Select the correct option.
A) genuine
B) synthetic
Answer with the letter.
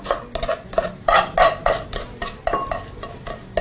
A